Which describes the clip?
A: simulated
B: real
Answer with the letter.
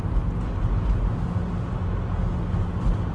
B